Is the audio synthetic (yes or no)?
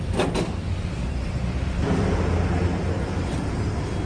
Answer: no